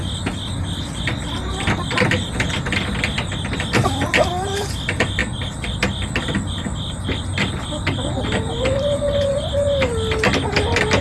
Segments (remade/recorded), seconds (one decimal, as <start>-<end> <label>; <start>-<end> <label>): 0.0-11.0 recorded